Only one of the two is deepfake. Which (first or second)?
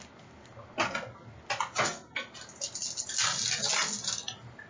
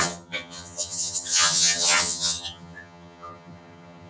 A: second